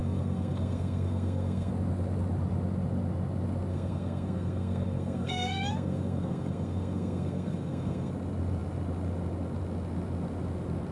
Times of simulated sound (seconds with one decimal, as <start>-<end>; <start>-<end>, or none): 0.0-1.7; 3.7-8.1